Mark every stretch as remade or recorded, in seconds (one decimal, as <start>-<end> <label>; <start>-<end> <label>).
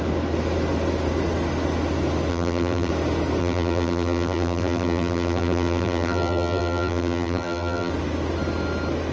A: 0.0-2.3 recorded; 2.3-2.9 remade; 2.9-3.4 recorded; 3.4-7.9 remade; 7.9-9.1 recorded